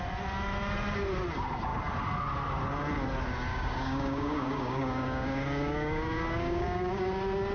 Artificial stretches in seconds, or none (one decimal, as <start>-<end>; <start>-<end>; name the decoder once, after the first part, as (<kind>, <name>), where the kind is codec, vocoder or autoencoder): 3.5-7.0 (codec, DAC)